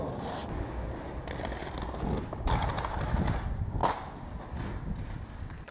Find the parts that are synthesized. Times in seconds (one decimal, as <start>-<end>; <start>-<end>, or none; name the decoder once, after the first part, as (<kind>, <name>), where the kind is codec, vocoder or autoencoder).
none